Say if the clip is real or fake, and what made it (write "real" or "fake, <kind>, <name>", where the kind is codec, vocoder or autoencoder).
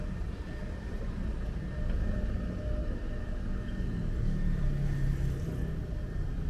real